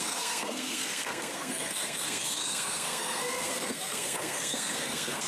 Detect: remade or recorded remade